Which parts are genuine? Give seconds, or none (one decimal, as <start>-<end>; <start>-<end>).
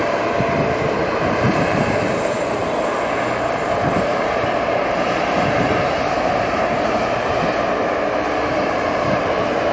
none